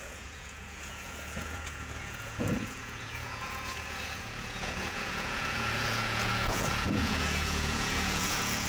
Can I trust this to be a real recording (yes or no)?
no